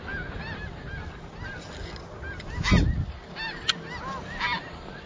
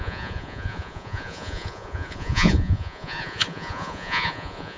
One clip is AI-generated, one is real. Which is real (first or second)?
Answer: first